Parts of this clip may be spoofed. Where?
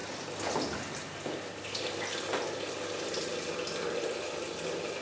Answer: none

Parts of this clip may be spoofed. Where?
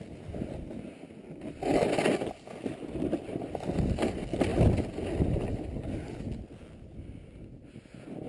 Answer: none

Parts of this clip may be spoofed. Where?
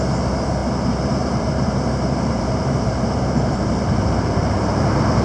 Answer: 0.0-5.2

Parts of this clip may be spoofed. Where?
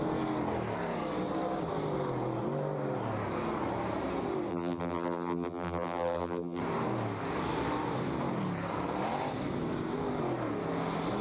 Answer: 4.5-6.6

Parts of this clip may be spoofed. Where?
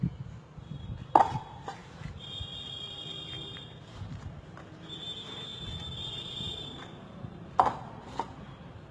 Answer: 0.0-5.5; 6.1-8.9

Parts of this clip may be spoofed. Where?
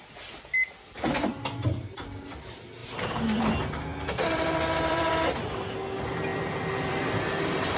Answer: 2.8-3.5; 3.9-5.1; 6.3-7.8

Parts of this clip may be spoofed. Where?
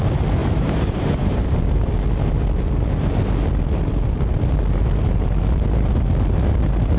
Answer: 0.4-1.9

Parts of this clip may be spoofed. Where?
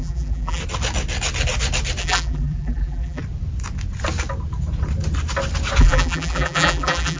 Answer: 0.0-0.6; 2.0-3.2; 5.8-7.2